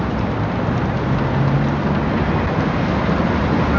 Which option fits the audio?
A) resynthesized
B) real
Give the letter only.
B